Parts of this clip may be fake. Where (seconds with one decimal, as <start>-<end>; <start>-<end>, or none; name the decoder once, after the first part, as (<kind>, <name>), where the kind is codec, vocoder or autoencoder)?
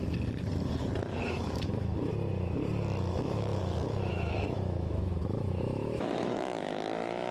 1.3-2.1 (autoencoder, DAC-VAE); 3.1-7.3